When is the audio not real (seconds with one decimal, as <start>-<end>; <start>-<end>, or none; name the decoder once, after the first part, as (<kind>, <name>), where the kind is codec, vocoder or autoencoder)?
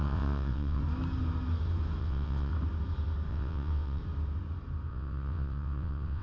0.0-0.8 (vocoder, WaveNeXt); 2.0-2.5; 3.3-4.0; 4.9-6.2